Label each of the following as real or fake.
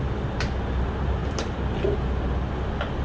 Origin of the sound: real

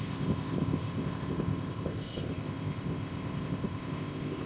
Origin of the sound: fake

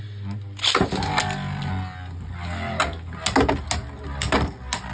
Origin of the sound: real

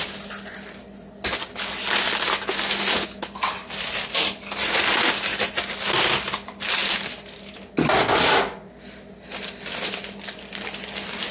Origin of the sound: real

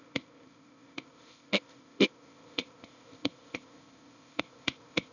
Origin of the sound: fake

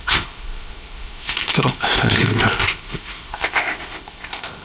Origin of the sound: fake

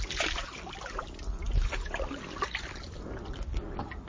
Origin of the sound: real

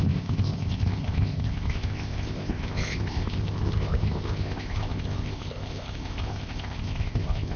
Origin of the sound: fake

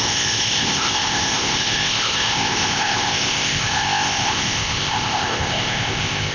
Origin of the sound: fake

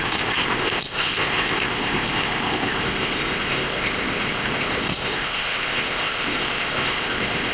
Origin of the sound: fake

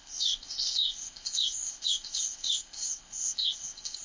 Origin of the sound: fake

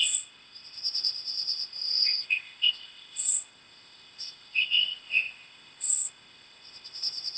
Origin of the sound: fake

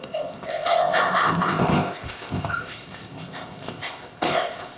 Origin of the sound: fake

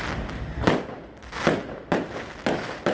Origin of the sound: real